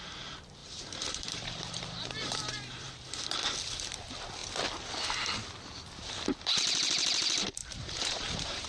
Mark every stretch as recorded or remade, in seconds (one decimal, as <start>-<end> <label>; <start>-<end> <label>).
0.0-0.6 recorded; 0.6-2.9 remade; 2.9-7.6 recorded; 7.6-8.7 remade